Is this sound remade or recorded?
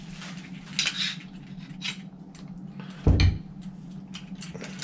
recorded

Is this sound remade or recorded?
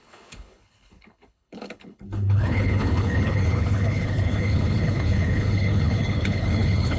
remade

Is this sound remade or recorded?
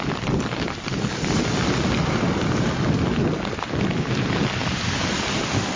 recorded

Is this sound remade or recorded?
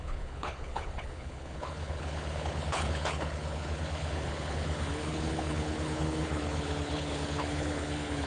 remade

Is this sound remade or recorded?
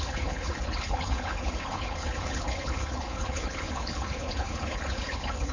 remade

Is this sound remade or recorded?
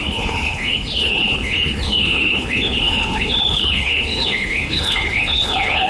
remade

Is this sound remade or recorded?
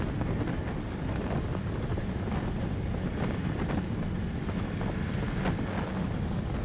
recorded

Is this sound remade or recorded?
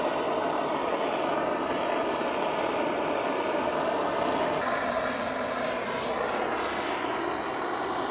recorded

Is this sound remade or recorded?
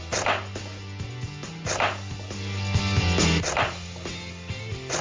recorded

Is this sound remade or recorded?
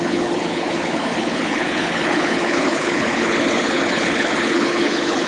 remade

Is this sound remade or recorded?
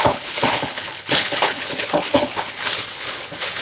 remade